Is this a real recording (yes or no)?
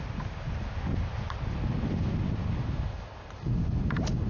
yes